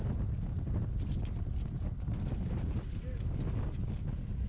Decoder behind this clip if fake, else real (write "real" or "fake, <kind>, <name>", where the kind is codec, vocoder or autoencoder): real